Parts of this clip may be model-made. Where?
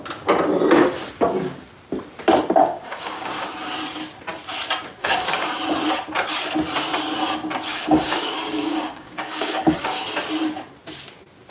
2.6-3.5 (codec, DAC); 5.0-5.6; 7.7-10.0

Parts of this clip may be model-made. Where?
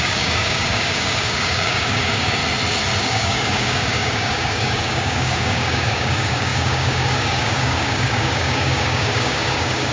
0.0-2.4 (codec, DAC); 3.0-9.9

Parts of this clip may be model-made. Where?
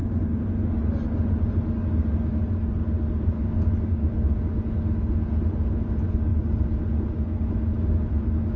none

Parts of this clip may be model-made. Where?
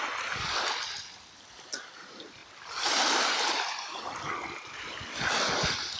none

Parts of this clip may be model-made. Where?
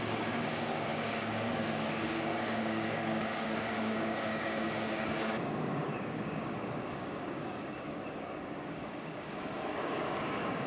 0.0-10.7 (codec, DAC)